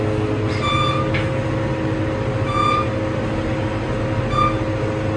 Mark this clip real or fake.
real